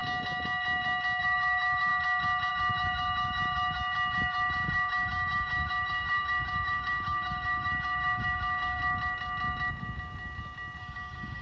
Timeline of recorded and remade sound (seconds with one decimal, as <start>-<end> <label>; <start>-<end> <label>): 0.0-1.2 recorded; 1.2-1.9 remade; 1.9-2.5 recorded; 2.5-8.8 remade; 8.8-10.8 recorded; 10.8-11.4 remade